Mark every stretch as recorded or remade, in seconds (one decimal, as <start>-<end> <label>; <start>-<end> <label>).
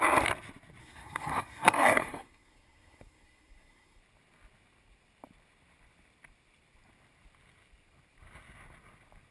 0.0-0.8 recorded; 0.8-4.0 remade; 4.0-9.3 recorded